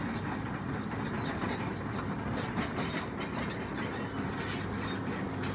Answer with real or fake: real